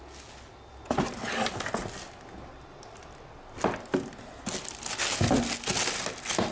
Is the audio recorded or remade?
recorded